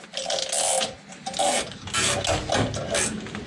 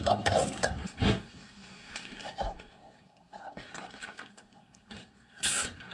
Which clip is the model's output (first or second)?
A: second